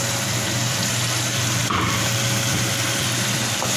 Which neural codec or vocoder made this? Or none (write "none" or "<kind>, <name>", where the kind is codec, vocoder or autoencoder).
vocoder, BigVGAN v2